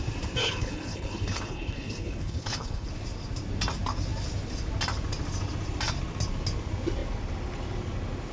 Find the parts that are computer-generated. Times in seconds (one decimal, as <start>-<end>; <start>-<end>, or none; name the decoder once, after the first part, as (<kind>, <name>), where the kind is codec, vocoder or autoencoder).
0.4-2.9 (codec, HILCodec)